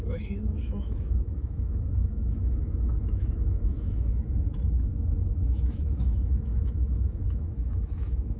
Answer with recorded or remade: remade